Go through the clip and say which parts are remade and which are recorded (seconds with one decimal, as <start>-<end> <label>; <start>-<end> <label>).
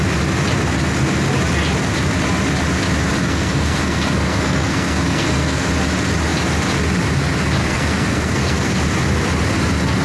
0.0-3.2 recorded; 3.2-5.7 remade; 5.7-7.6 recorded; 7.6-8.8 remade; 8.8-10.0 recorded